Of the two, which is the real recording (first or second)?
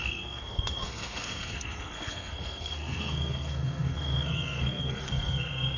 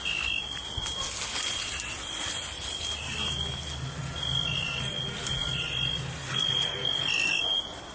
second